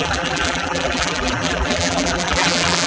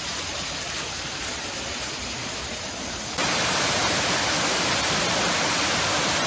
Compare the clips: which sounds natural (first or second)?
second